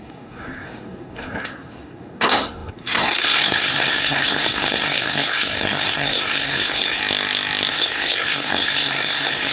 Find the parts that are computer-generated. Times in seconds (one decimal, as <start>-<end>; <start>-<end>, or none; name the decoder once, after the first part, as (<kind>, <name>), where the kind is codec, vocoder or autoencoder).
0.0-7.0 (codec, SNAC); 7.7-9.5